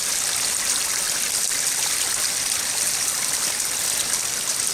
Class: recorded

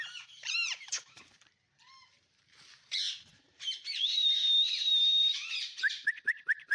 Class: remade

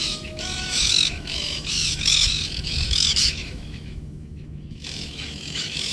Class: remade